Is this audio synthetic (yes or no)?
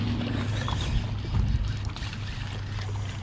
no